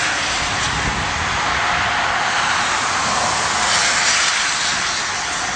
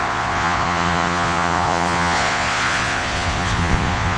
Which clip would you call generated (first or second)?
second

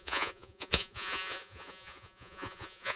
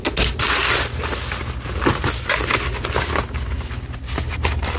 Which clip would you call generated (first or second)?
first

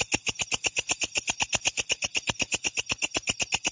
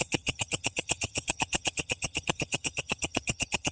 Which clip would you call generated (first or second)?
second